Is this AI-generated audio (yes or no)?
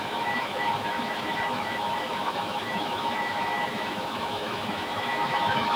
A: yes